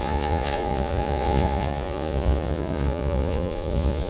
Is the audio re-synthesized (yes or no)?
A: yes